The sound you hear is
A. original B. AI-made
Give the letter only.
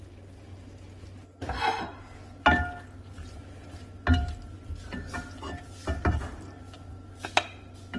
A